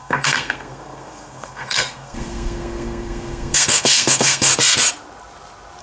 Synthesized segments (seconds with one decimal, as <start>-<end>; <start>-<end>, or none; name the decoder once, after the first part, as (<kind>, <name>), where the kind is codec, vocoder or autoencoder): 0.0-4.5 (codec, SNAC)